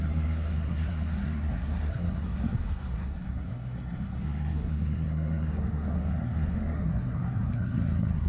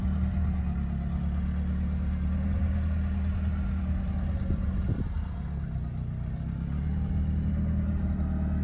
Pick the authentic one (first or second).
second